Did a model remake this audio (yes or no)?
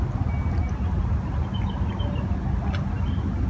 no